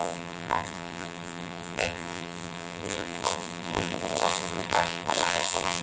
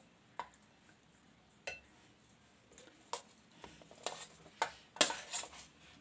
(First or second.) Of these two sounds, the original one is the second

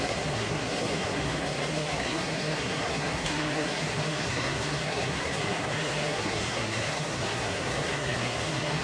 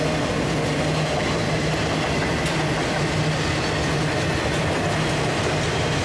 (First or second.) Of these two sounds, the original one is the second